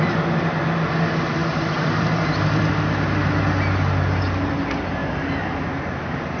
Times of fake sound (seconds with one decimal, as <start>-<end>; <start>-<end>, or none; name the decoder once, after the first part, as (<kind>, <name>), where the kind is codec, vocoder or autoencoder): 1.4-2.7 (vocoder, BigVGAN v2); 5.0-5.6